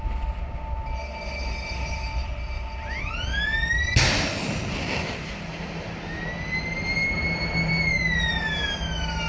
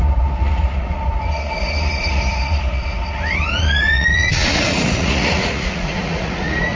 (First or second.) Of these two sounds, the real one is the first